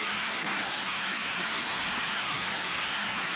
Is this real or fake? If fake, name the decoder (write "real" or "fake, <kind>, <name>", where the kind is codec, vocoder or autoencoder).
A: fake, codec, SNAC